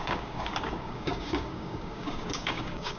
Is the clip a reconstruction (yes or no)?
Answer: yes